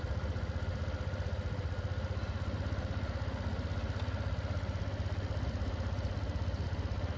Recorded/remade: recorded